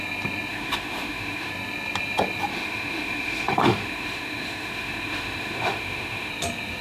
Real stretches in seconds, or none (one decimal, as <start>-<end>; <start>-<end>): 0.0-0.5; 1.5-2.5; 6.3-6.8